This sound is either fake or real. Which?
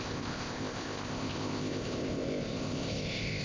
fake